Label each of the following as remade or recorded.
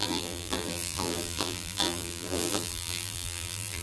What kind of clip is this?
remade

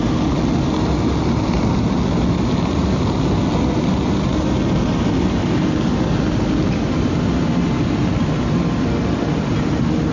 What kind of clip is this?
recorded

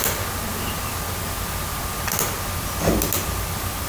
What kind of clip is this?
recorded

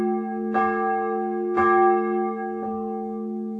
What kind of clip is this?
recorded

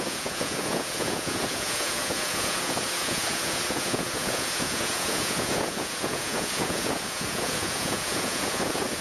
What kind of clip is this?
remade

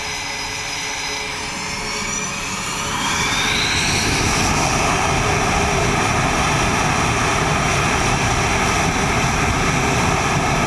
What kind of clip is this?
recorded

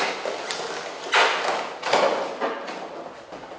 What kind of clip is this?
recorded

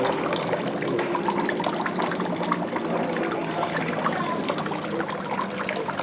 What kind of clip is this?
recorded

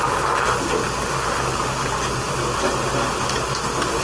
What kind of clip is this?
recorded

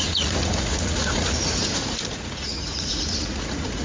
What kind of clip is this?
remade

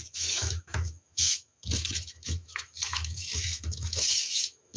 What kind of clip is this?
remade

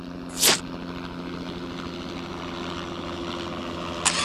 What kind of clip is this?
recorded